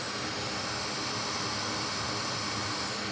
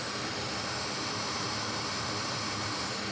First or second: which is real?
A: first